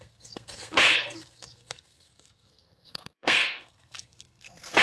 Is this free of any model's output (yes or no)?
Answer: no